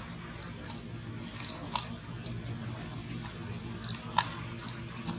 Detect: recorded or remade recorded